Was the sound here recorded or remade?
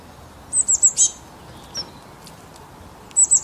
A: recorded